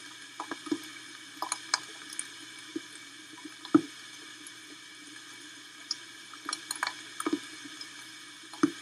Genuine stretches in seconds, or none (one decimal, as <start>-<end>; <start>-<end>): 0.0-8.8